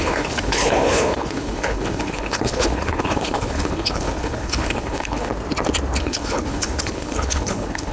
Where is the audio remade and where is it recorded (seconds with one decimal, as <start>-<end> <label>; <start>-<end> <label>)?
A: 0.0-5.3 remade; 5.3-6.0 recorded; 6.0-7.9 remade